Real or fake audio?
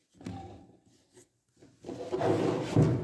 real